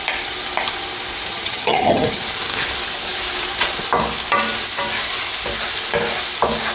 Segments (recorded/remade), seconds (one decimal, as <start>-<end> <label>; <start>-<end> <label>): 0.0-1.3 recorded; 1.3-2.2 remade; 2.2-6.7 recorded